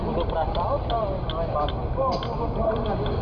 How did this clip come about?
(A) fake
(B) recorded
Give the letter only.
B